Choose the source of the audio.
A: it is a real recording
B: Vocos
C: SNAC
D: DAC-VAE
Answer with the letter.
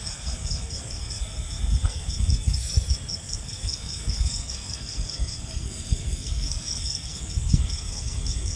C